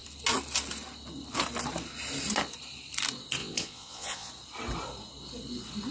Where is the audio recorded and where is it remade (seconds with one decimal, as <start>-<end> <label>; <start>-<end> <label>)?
0.0-3.4 recorded; 3.4-4.3 remade; 4.3-5.9 recorded